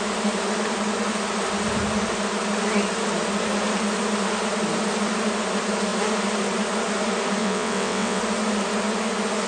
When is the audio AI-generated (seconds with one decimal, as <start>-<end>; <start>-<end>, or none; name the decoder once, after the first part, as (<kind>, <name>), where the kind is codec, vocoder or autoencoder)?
7.4-8.2 (vocoder, WaveNeXt)